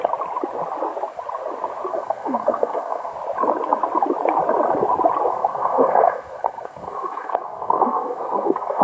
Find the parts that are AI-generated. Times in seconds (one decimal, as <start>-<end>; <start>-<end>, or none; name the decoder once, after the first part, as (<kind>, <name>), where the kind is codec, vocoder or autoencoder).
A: 1.9-3.1 (codec, SNAC); 5.3-8.8